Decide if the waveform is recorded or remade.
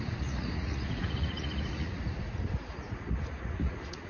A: remade